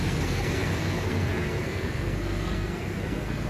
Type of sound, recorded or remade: remade